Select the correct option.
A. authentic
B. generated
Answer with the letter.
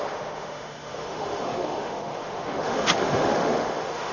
B